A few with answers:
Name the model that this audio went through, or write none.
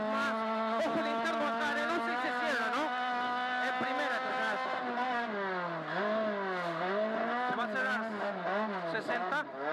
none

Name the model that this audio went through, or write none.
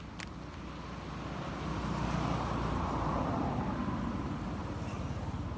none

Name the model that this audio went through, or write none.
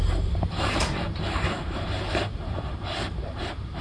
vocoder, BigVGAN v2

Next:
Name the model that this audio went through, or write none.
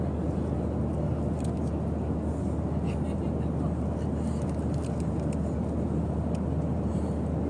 none